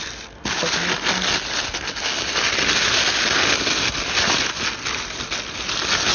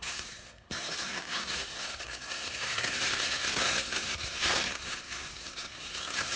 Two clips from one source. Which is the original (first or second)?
first